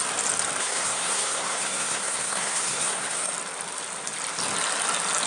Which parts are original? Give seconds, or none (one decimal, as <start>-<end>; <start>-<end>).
0.0-0.6; 3.3-5.3

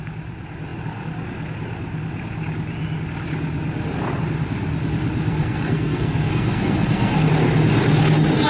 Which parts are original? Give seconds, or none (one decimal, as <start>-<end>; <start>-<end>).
0.0-5.3; 7.3-8.5